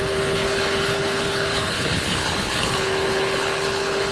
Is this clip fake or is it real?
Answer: fake